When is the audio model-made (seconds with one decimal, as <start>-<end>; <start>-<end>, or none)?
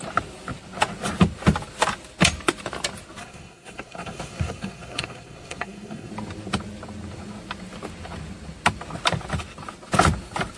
3.2-6.1